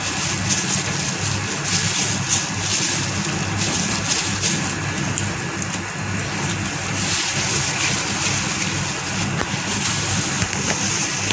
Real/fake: real